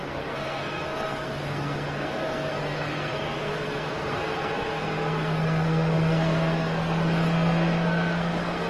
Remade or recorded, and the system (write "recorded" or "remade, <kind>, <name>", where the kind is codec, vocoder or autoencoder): remade, codec, SNAC